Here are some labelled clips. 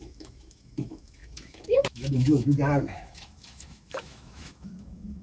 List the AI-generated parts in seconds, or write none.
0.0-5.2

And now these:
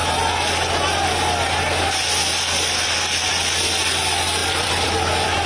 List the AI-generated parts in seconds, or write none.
4.4-5.5

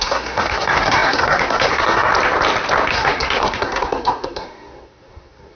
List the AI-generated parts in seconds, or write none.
0.0-2.1; 2.9-5.6